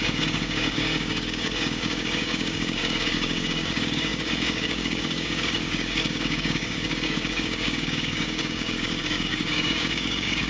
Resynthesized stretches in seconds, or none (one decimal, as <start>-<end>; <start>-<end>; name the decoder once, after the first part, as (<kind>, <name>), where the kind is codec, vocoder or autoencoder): 0.0-10.5 (codec, DAC)